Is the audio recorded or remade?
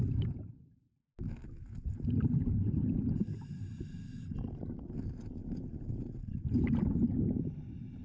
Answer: recorded